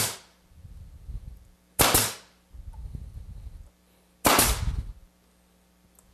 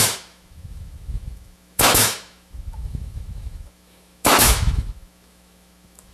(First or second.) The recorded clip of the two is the first